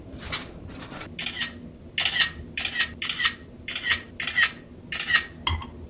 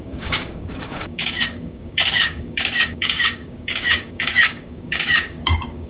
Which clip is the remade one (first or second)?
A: second